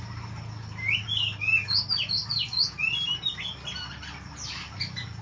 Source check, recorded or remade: recorded